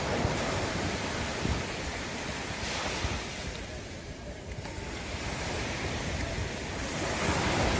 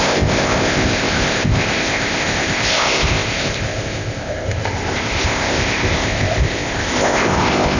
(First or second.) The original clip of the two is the first